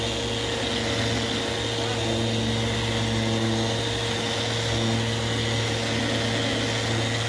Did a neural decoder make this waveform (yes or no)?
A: no